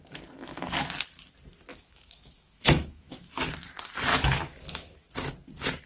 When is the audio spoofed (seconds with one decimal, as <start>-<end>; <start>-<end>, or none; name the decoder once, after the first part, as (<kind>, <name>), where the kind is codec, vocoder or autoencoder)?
1.7-3.4 (autoencoder, DAC-VAE); 4.1-5.1